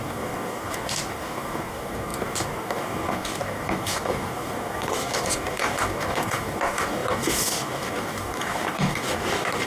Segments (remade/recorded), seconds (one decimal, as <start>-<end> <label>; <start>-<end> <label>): 0.0-9.7 remade